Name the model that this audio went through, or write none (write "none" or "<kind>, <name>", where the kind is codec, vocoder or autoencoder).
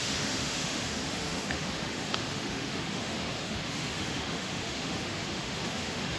autoencoder, DAC-VAE